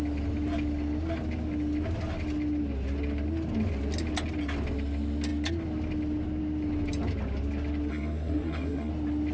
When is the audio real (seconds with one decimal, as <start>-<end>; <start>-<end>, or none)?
0.0-7.9; 8.9-9.3